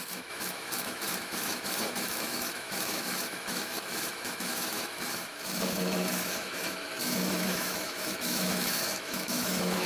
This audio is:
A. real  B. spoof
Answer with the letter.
B